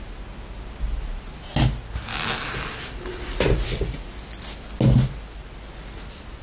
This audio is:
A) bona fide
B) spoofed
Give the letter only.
A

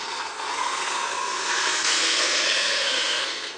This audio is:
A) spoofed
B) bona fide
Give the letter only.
A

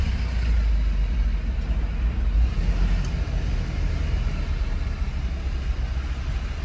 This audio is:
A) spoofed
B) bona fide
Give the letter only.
B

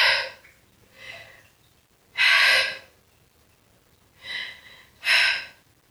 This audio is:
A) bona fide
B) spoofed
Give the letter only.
A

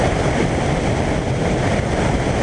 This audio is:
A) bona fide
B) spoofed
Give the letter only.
A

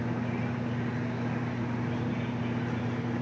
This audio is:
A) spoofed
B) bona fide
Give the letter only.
B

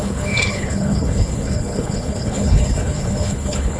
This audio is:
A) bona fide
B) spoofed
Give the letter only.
B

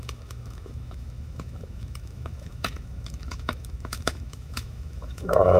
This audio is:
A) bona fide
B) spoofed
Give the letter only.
B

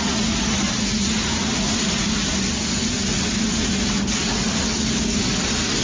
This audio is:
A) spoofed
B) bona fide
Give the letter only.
B